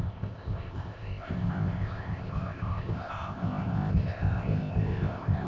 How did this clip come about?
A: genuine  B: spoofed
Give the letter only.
B